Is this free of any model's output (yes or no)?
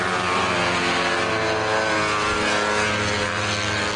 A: yes